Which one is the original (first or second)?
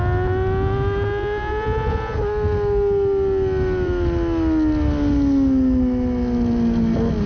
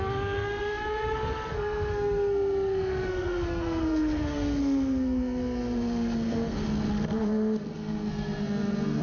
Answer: first